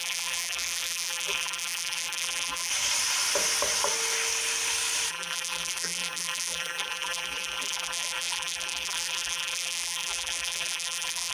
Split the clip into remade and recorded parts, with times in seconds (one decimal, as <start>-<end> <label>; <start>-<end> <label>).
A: 0.0-2.7 remade; 2.7-5.1 recorded; 5.1-11.3 remade